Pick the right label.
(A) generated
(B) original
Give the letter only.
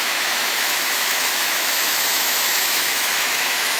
A